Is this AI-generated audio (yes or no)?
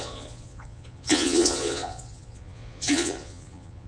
yes